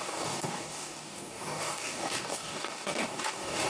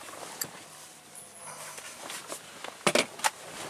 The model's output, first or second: first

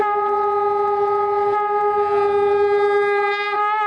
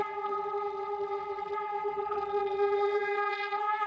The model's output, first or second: second